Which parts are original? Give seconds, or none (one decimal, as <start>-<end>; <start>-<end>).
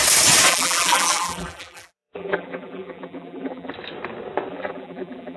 0.0-0.5; 3.7-4.5